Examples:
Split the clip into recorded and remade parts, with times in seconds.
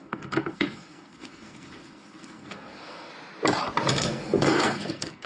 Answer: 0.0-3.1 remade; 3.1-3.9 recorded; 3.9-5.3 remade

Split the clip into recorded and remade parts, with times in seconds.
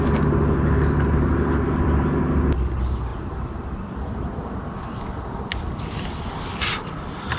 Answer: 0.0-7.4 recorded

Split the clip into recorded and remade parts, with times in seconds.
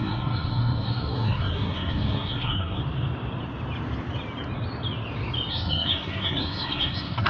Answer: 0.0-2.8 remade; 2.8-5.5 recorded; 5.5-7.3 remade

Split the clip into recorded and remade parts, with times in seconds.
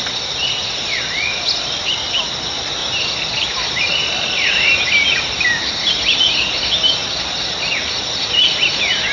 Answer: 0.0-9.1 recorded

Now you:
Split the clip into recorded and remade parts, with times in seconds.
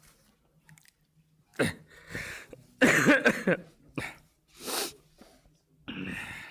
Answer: 0.0-6.5 recorded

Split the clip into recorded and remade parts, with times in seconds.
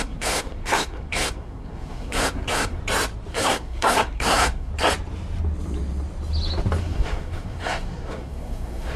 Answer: 0.0-2.8 remade; 2.8-3.3 recorded; 3.3-4.7 remade; 4.7-6.8 recorded; 6.8-9.0 remade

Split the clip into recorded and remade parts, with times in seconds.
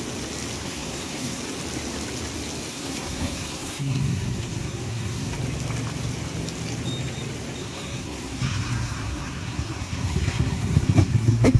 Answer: 0.0-0.6 recorded; 0.6-1.4 remade; 1.4-2.7 recorded; 2.7-5.3 remade; 5.3-7.6 recorded; 7.6-11.6 remade